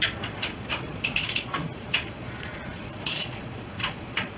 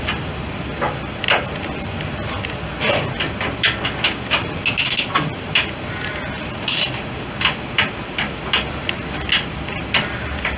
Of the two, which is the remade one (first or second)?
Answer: first